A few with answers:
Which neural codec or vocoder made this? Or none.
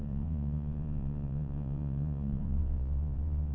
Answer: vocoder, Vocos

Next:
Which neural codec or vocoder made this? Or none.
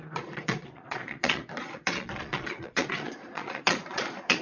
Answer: vocoder, Vocos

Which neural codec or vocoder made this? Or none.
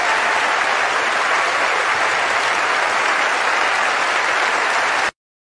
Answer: none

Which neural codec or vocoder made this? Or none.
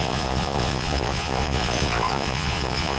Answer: vocoder, Vocos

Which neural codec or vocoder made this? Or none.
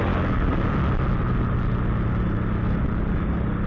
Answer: none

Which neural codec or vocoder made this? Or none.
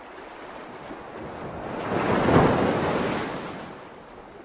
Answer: none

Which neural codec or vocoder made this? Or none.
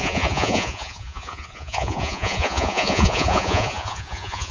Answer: vocoder, Vocos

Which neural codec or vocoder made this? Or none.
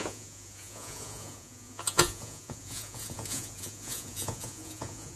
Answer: vocoder, Vocos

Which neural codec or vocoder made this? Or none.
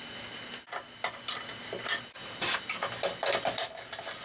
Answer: none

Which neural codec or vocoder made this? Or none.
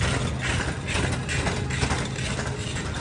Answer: none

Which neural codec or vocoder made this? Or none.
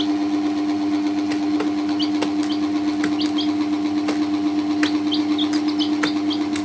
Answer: none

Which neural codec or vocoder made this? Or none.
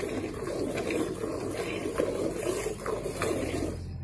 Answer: none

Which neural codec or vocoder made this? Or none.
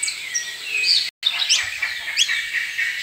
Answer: none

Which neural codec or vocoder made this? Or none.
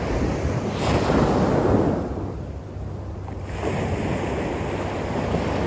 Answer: none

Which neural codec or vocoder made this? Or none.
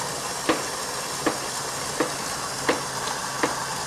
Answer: none